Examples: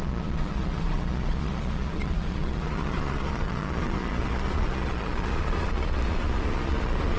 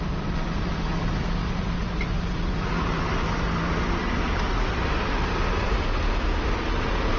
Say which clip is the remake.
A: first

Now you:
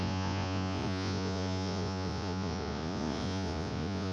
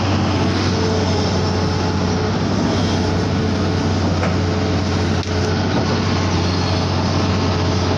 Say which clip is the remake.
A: first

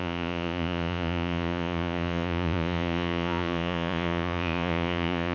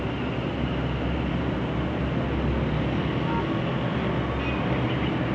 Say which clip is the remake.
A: first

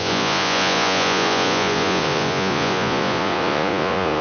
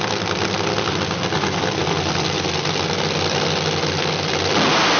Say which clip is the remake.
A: first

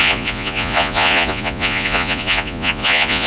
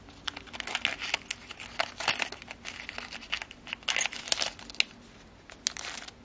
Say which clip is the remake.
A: first